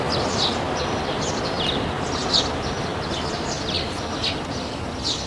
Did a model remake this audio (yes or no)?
no